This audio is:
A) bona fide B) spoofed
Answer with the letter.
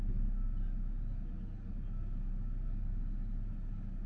A